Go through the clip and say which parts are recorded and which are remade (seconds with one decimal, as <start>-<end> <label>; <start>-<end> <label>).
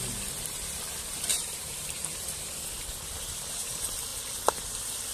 0.0-1.3 recorded; 1.3-2.6 remade; 2.6-5.1 recorded